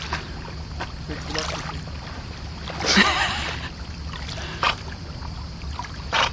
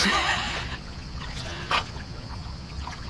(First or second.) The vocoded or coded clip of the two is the second